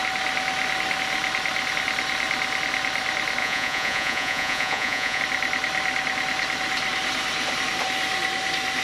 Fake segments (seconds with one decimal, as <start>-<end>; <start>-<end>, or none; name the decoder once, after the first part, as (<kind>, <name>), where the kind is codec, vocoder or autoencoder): 3.4-5.2 (vocoder, Vocos)